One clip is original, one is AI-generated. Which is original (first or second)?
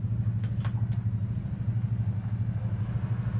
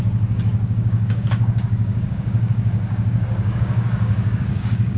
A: first